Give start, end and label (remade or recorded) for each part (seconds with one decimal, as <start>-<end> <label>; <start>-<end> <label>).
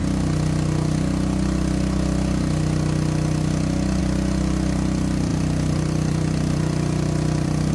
0.0-4.0 recorded; 4.0-7.7 remade